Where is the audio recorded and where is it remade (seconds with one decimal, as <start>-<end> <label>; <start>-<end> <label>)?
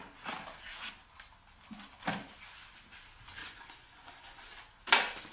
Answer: 0.0-3.4 recorded; 3.4-4.4 remade; 4.4-5.3 recorded